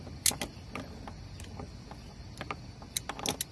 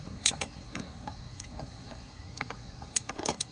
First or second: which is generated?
second